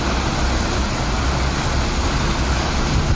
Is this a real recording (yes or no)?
yes